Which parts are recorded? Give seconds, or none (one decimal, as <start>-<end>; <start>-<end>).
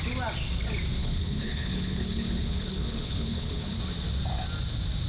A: 0.0-1.0; 3.8-5.1